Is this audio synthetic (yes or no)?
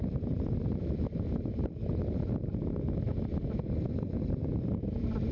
no